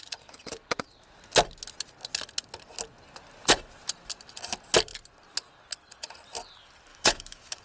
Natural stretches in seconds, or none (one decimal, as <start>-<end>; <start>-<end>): 0.0-6.9